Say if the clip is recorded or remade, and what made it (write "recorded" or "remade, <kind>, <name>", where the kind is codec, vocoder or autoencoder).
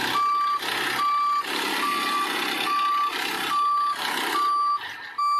recorded